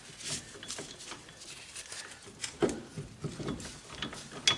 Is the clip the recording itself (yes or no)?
yes